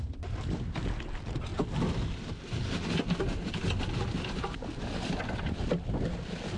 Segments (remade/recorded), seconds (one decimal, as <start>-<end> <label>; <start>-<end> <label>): 0.0-6.6 recorded

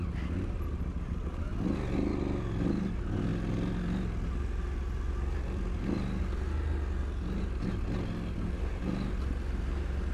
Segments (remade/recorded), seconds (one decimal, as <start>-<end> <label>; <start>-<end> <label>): 0.0-10.1 recorded

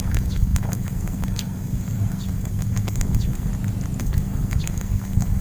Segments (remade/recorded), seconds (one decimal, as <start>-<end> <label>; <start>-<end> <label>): 0.0-3.5 remade; 3.5-4.0 recorded; 4.0-5.4 remade

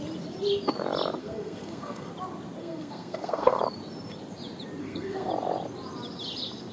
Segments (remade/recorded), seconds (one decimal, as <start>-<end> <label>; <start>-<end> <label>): 0.0-1.2 recorded; 1.2-2.1 remade; 2.1-2.6 recorded; 2.6-3.6 remade; 3.6-4.8 recorded; 4.8-5.3 remade; 5.3-6.7 recorded

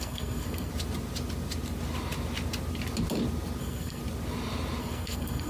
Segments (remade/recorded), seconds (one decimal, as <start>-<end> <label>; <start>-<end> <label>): 0.0-0.7 remade; 0.7-3.6 recorded; 3.6-4.0 remade; 4.0-4.8 recorded; 4.8-5.5 remade